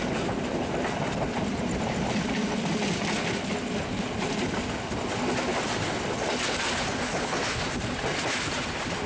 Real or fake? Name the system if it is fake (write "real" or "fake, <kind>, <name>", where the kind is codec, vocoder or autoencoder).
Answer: real